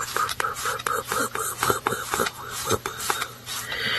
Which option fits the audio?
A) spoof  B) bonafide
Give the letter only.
B